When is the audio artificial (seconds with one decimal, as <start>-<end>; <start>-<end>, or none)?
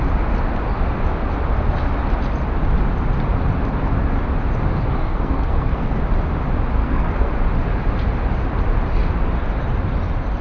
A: 5.0-6.0; 6.8-7.3